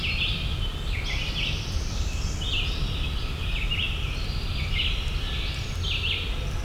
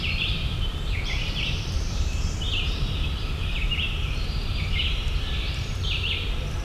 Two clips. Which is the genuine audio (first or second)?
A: first